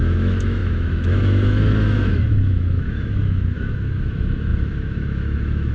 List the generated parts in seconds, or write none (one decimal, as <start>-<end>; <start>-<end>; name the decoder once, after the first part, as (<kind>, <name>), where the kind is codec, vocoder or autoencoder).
0.0-5.7 (autoencoder, DAC-VAE)

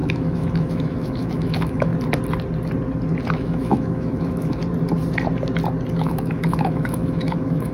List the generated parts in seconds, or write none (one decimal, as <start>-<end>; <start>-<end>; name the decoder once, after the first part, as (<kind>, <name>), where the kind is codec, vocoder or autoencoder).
0.0-1.9 (autoencoder, DAC-VAE); 3.3-4.6; 5.9-7.7

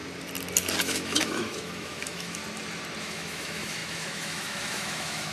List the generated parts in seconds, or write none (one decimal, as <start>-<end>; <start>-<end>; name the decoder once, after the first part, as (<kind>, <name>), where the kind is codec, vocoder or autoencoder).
0.8-2.4 (autoencoder, DAC-VAE); 3.0-5.3

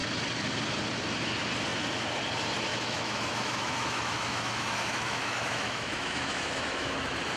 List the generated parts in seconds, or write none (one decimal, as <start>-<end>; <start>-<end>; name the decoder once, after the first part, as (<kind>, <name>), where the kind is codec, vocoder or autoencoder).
2.7-6.9 (autoencoder, DAC-VAE)

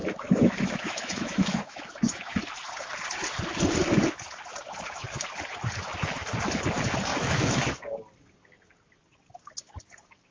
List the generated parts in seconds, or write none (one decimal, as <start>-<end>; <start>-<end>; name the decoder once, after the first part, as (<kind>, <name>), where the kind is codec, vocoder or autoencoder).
0.0-2.4 (autoencoder, DAC-VAE); 7.1-7.7

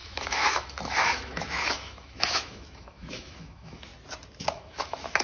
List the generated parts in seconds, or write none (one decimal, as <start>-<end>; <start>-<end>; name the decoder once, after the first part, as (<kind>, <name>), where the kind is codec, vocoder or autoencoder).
0.0-3.9 (autoencoder, DAC-VAE); 4.5-5.2

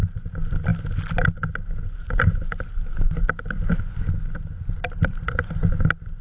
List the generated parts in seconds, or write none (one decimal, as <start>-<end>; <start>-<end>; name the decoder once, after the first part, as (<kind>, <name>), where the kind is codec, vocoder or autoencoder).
none